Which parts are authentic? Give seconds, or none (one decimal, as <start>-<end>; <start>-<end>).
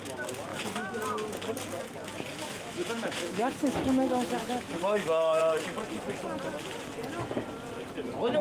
0.0-0.5; 1.0-2.4; 5.4-8.4